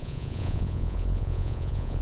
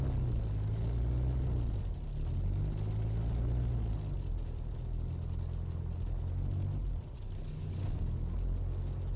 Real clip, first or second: second